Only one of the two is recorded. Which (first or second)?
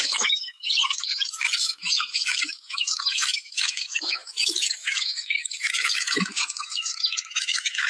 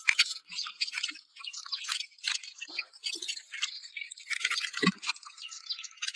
second